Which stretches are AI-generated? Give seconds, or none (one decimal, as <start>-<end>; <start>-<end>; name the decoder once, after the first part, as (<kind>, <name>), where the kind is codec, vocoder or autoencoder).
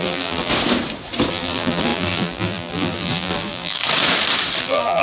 0.0-0.5 (vocoder, BigVGAN v2); 1.3-3.8; 4.6-5.0